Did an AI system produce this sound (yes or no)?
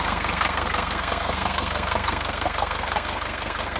yes